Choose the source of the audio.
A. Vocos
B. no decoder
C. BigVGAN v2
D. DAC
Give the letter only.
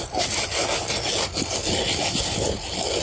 B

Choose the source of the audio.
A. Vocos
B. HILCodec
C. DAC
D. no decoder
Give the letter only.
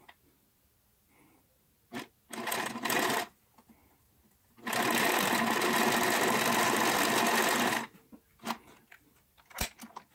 D